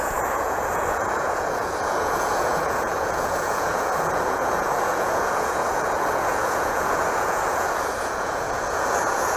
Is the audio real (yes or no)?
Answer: no